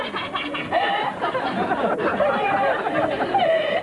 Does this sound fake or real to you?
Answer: real